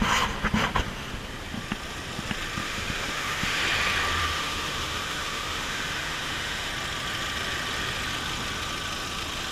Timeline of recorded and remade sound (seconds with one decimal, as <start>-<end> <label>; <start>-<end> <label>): 0.0-2.6 recorded; 2.6-3.6 remade; 3.6-4.2 recorded; 4.2-6.7 remade; 6.7-9.5 recorded